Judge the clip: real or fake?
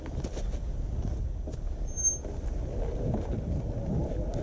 real